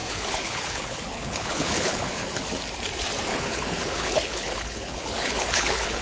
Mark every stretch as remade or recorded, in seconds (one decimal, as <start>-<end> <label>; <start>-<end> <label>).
0.0-2.4 remade; 2.4-3.3 recorded; 3.3-6.0 remade

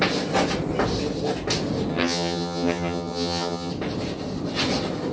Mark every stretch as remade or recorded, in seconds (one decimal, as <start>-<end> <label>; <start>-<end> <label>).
0.0-1.9 recorded; 1.9-3.7 remade; 3.7-5.1 recorded

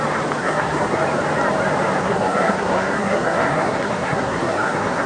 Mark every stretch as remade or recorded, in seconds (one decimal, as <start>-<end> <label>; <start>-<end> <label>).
0.0-0.4 recorded; 0.4-1.0 remade; 1.0-2.0 recorded; 2.0-5.1 remade

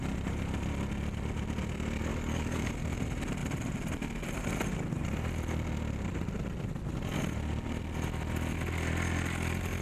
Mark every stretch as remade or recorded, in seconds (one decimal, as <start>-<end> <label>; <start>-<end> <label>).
0.0-2.1 recorded; 2.1-2.7 remade; 2.7-9.8 recorded

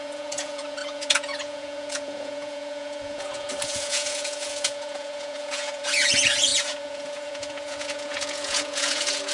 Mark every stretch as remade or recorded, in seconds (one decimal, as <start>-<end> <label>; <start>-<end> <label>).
0.0-9.3 remade

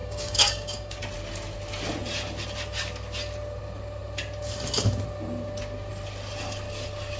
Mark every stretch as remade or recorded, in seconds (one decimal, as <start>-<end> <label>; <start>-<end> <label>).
0.0-1.0 remade; 1.0-7.2 recorded

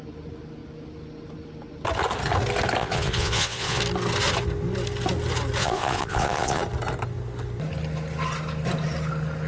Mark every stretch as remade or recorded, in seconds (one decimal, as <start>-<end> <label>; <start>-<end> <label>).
0.0-2.8 recorded; 2.8-3.8 remade; 3.8-5.6 recorded; 5.6-6.6 remade; 6.6-9.5 recorded